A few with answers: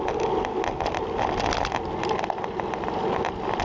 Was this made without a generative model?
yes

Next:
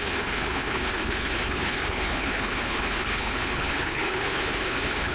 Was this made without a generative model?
no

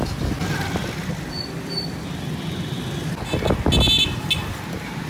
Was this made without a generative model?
yes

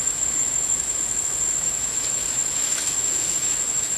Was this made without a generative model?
no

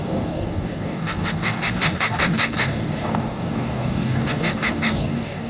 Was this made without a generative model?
no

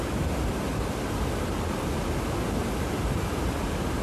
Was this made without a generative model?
yes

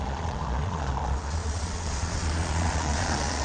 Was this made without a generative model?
no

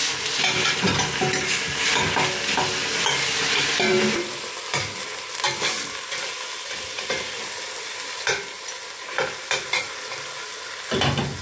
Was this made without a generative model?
yes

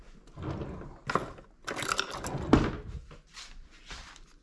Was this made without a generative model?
yes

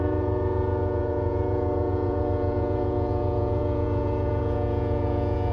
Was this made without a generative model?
no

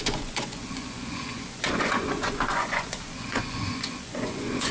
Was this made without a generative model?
no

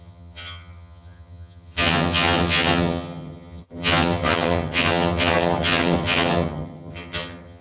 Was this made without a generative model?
no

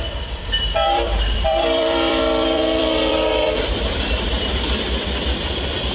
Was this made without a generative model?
no